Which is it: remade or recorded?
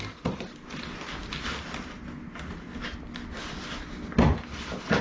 recorded